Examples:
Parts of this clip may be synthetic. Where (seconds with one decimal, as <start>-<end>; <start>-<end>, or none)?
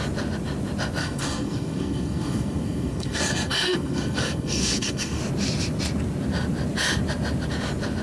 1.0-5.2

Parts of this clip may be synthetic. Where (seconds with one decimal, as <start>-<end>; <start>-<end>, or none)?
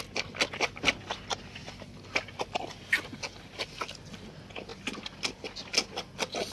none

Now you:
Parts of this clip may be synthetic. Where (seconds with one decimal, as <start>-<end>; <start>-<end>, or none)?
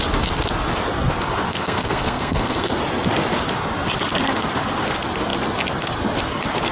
1.5-2.8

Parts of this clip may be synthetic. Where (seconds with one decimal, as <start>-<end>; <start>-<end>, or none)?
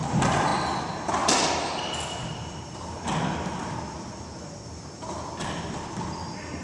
none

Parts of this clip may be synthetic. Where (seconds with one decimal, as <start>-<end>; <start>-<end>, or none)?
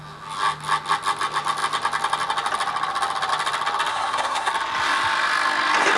3.9-4.5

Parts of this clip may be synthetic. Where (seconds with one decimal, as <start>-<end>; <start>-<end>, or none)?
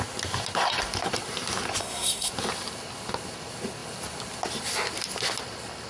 1.8-2.3